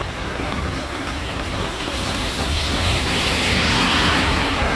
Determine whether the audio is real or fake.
fake